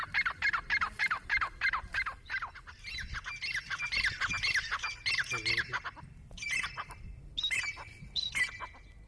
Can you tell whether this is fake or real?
real